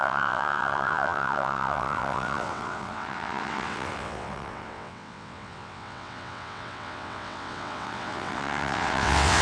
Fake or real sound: fake